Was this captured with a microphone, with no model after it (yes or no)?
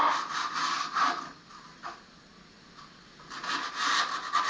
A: yes